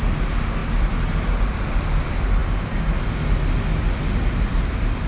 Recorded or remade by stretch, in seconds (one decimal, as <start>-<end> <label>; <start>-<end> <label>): 0.0-0.6 recorded; 0.6-1.1 remade; 1.1-5.1 recorded